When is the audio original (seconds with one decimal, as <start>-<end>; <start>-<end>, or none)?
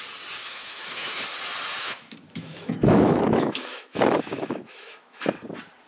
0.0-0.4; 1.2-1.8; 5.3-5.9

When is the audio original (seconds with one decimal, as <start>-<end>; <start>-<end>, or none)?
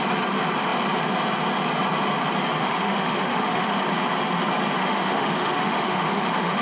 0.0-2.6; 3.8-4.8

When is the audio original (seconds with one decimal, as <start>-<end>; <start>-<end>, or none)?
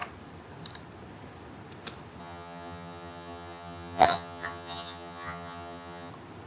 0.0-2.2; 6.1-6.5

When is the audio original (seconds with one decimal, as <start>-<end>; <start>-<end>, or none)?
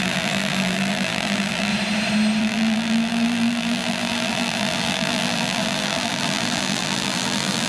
1.7-2.4